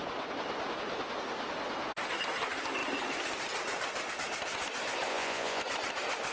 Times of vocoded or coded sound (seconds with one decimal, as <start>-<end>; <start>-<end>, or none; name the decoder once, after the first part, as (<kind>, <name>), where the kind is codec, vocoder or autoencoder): 5.1-5.6 (vocoder, Vocos)